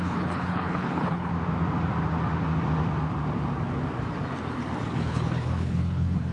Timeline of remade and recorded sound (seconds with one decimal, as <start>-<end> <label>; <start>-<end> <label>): 0.0-1.3 remade; 1.3-4.8 recorded; 4.8-6.3 remade